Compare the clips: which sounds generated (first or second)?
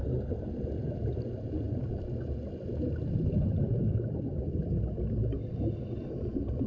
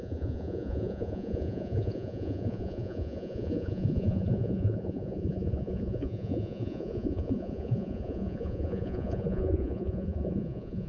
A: second